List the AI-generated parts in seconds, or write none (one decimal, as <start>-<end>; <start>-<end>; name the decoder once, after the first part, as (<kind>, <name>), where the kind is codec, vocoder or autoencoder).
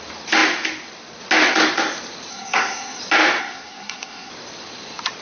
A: 2.3-3.0 (codec, SNAC); 3.4-4.3